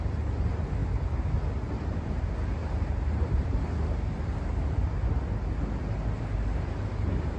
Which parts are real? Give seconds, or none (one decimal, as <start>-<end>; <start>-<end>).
0.0-7.4